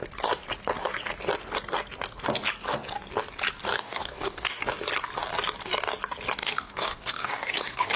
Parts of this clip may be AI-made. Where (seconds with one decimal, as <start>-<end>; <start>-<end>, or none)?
3.7-4.6; 6.4-8.0